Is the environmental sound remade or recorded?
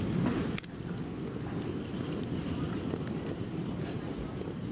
recorded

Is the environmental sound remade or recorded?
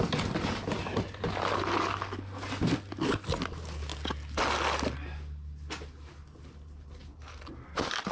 recorded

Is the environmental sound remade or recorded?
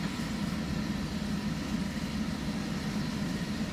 recorded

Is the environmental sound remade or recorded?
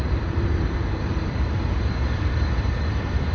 remade